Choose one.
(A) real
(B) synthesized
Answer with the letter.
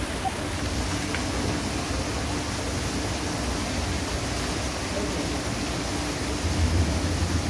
A